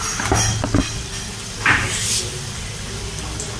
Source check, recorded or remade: recorded